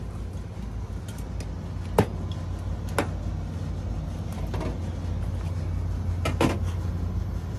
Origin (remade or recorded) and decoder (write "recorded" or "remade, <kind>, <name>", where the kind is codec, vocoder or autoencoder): recorded